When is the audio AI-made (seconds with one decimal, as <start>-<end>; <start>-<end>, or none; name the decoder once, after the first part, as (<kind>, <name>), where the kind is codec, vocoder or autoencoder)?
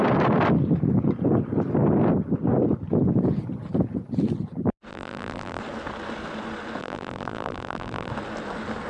4.9-5.6 (vocoder, BigVGAN v2); 6.8-8.1